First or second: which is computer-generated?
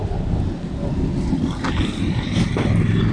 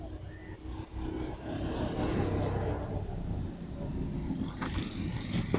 first